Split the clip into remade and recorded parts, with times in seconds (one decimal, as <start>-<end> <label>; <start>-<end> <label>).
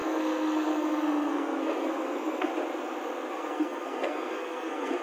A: 0.0-2.5 remade; 2.5-3.3 recorded; 3.3-5.0 remade